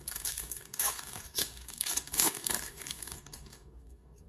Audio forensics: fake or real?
fake